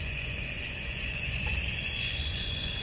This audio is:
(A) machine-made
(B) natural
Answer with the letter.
A